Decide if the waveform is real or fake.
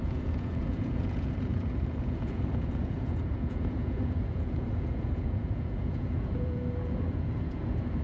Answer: fake